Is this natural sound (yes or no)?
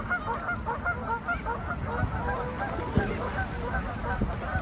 yes